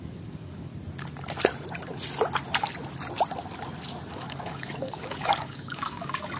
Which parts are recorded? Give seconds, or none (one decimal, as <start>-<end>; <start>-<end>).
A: 0.7-4.1